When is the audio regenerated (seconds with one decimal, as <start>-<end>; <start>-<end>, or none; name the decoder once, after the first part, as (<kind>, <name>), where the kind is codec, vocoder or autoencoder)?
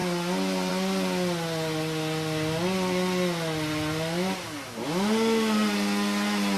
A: none